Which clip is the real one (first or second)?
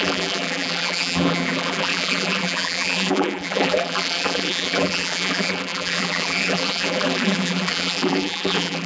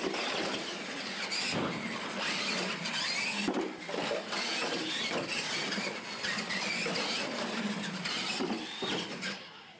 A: second